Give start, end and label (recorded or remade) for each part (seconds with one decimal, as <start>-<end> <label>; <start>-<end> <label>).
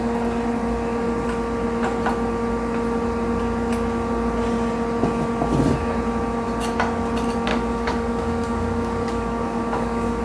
0.0-7.5 recorded; 7.5-10.2 remade